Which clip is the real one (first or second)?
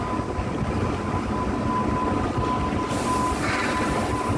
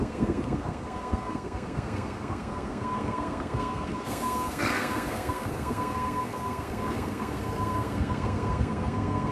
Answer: first